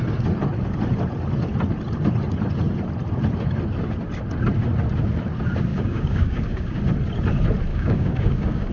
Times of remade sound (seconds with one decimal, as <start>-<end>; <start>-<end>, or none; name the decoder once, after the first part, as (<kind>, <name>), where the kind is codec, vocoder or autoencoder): 5.7-6.8 (codec, DAC); 7.7-8.7